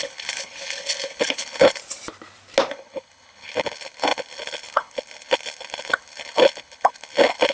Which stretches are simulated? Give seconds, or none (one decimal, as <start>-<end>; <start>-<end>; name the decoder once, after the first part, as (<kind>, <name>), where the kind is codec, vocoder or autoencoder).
0.0-1.8 (codec, HILCodec); 2.7-7.5